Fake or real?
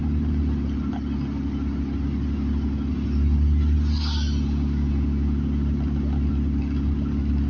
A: real